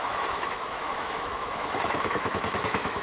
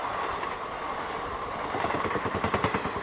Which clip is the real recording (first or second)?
second